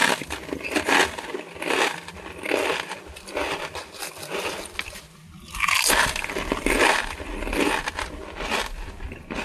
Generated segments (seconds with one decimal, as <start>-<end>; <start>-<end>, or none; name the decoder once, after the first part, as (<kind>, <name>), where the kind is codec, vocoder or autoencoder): none